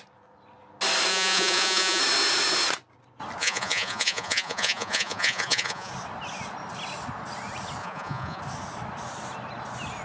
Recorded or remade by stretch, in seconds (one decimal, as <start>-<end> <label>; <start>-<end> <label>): 0.0-1.1 recorded; 1.1-2.0 remade; 2.0-3.4 recorded; 3.4-5.9 remade; 5.9-7.8 recorded; 7.8-8.4 remade; 8.4-10.0 recorded